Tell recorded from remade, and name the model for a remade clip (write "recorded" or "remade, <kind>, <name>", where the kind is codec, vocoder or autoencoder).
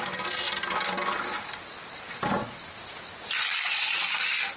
recorded